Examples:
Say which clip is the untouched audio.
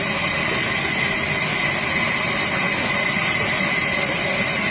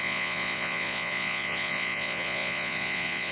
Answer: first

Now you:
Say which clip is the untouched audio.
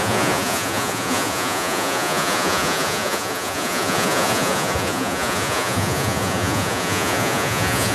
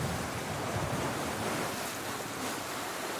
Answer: second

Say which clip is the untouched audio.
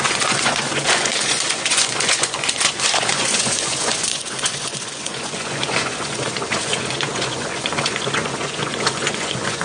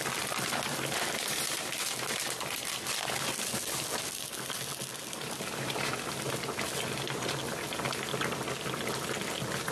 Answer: second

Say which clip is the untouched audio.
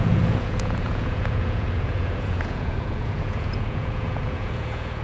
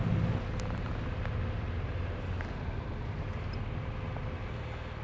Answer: second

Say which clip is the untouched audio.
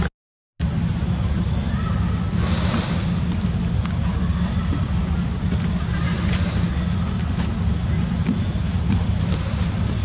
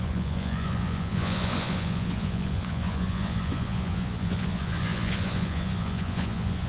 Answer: first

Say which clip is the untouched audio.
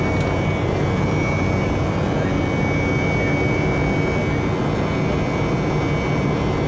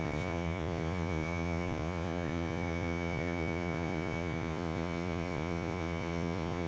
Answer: first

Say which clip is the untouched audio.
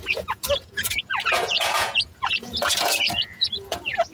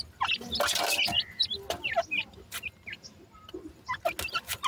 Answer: second